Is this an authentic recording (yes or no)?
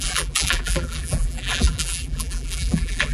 no